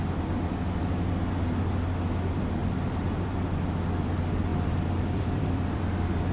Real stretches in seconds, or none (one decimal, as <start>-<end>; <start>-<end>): 0.0-2.6; 3.7-4.5

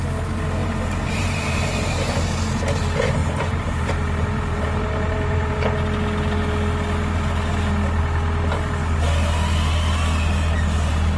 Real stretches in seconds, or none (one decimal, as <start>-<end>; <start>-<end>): 0.0-0.6; 2.2-3.2; 5.6-11.2

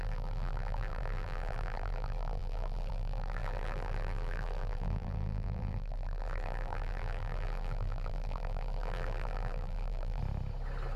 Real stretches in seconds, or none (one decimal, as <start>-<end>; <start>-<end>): 10.2-11.0

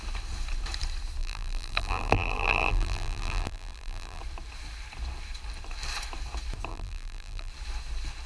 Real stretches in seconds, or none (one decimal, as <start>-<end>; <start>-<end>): 0.0-1.2; 4.2-6.7; 7.5-8.3

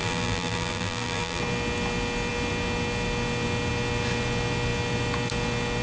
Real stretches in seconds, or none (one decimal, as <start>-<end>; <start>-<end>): 1.4-5.8